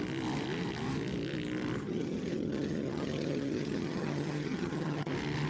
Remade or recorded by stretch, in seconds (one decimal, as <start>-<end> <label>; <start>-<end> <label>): 0.0-1.8 recorded; 1.8-5.1 remade; 5.1-5.5 recorded